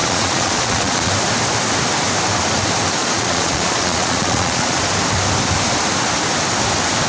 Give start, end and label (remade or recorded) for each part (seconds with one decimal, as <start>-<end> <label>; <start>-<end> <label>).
0.0-1.1 remade; 1.1-3.0 recorded; 3.0-4.8 remade; 4.8-7.1 recorded